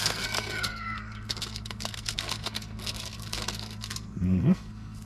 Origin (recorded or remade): remade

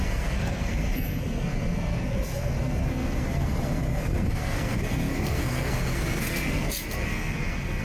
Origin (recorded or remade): remade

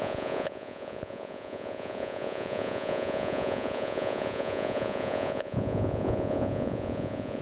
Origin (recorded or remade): remade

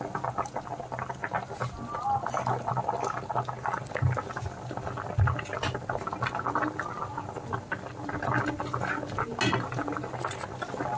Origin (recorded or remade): recorded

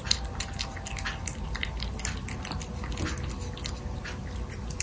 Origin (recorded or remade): recorded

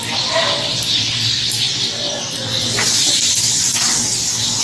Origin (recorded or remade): recorded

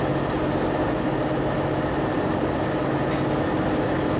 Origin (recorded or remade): recorded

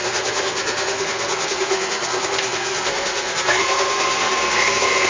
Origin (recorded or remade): remade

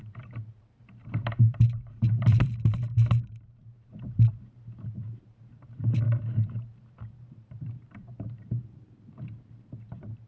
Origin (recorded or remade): remade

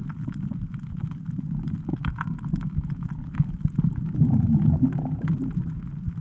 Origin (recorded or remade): recorded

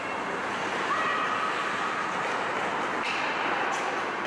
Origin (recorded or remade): recorded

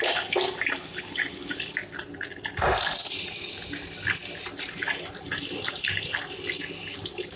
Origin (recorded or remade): recorded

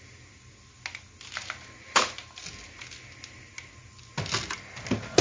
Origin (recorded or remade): recorded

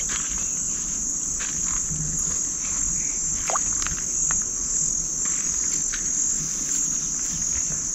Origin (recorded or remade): recorded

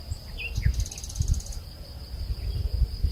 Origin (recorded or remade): recorded